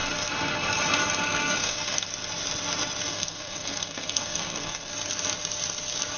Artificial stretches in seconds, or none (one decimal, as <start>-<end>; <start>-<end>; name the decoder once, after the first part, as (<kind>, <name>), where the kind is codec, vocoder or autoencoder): 1.2-2.1 (codec, SNAC); 3.1-4.9